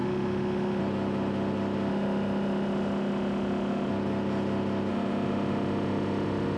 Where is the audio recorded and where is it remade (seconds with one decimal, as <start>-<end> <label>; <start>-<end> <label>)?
0.0-0.8 remade; 0.8-1.9 recorded; 1.9-3.9 remade; 3.9-4.9 recorded; 4.9-6.6 remade